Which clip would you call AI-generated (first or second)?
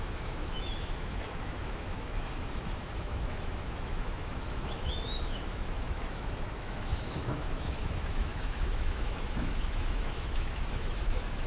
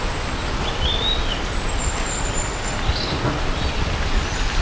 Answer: first